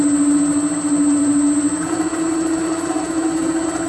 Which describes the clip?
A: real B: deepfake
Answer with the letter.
A